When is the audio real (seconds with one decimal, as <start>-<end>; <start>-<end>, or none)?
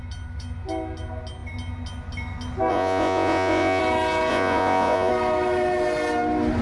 0.0-2.7; 3.8-4.3; 5.1-6.6